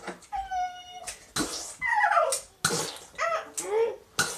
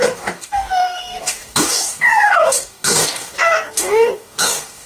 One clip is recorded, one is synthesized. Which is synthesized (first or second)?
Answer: second